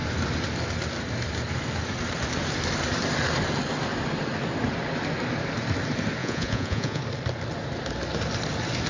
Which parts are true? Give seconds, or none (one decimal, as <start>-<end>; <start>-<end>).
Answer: 0.0-6.2; 7.0-8.9